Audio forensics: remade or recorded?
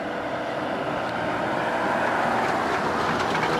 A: recorded